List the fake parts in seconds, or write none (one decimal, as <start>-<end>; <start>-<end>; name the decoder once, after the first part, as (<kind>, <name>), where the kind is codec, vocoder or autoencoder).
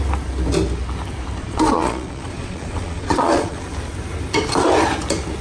1.4-3.6 (vocoder, Vocos)